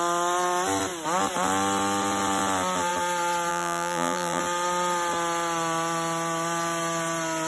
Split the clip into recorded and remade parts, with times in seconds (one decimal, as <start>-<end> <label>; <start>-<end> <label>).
0.0-3.5 recorded; 3.5-4.4 remade; 4.4-7.5 recorded